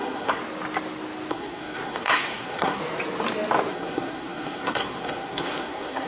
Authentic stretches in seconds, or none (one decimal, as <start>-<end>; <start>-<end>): 0.4-1.3; 2.8-3.7